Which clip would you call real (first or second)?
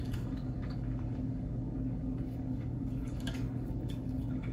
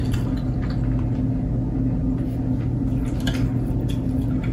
second